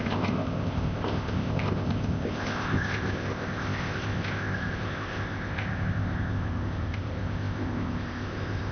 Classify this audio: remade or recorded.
remade